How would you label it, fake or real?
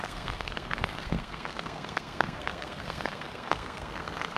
fake